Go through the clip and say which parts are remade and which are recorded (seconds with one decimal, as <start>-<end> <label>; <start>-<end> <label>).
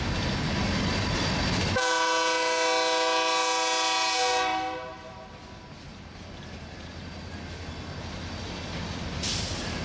0.0-9.8 recorded